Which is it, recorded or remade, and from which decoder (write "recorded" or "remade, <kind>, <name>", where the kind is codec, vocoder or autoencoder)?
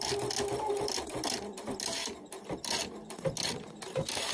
recorded